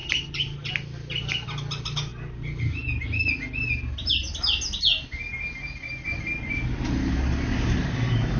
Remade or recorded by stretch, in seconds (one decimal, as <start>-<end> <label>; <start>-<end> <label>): 0.0-8.4 recorded